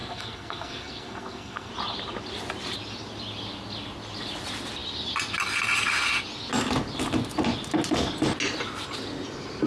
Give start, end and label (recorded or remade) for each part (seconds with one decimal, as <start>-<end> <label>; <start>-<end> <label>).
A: 0.0-1.7 remade; 1.7-9.7 recorded